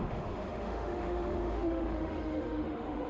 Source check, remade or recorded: remade